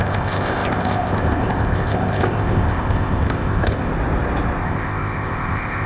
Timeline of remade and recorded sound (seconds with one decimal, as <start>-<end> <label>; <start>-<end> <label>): 0.0-3.9 remade; 3.9-4.6 recorded; 4.6-5.9 remade

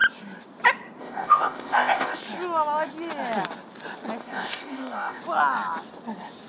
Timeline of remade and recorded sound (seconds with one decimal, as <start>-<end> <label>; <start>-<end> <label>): 0.0-1.0 recorded; 1.0-2.2 remade; 2.2-4.2 recorded; 4.2-5.2 remade; 5.2-6.5 recorded

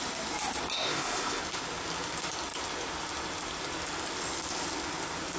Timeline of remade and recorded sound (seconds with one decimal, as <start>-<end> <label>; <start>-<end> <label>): 0.0-0.7 recorded; 0.7-1.4 remade; 1.4-5.4 recorded

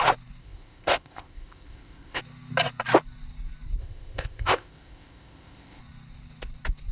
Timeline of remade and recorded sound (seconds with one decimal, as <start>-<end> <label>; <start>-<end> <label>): 0.0-0.4 recorded; 0.4-2.2 remade; 2.2-3.8 recorded; 3.8-5.8 remade; 5.8-6.9 recorded